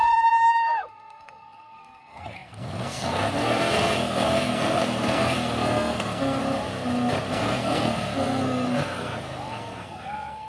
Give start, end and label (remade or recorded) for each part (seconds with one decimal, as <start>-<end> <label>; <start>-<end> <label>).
0.0-6.4 remade; 6.4-7.3 recorded; 7.3-10.5 remade